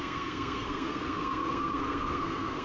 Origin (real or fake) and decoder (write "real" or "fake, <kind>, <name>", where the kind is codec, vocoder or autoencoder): fake, codec, SNAC